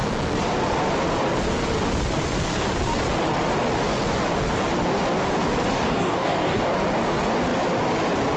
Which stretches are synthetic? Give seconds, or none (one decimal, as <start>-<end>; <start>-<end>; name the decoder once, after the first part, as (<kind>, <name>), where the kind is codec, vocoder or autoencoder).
5.7-6.6 (codec, DAC)